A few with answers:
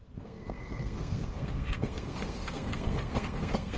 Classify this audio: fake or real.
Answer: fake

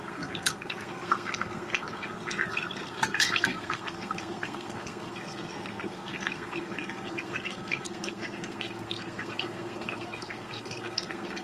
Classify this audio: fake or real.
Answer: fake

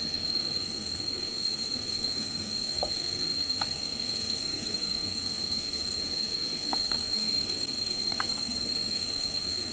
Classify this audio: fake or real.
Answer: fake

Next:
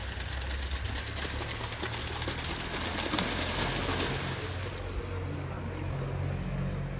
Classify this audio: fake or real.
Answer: real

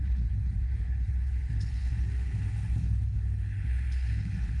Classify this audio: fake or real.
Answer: fake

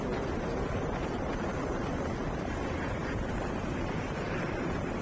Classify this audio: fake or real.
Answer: fake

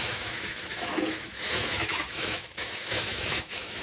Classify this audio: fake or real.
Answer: fake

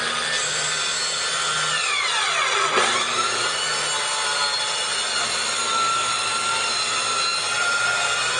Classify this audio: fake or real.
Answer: real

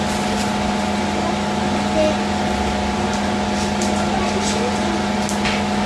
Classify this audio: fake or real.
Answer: real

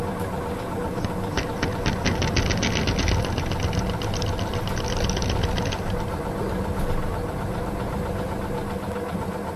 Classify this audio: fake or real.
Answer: real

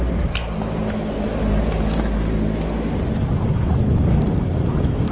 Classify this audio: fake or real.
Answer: real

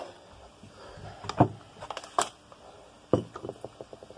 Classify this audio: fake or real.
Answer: real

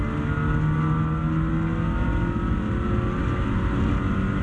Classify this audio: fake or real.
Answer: real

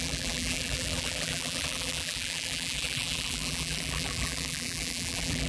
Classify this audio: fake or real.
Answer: fake